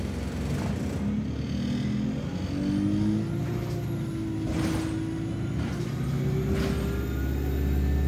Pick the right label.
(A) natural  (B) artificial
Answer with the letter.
A